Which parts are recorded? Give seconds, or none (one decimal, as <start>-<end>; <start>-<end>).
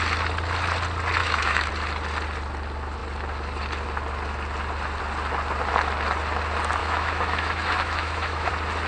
0.0-1.2; 1.7-6.8; 8.5-8.9